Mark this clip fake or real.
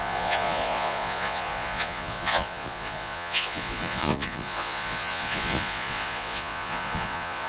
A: fake